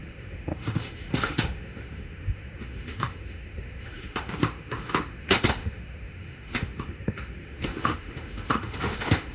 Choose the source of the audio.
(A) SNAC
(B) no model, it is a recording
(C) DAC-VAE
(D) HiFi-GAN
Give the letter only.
C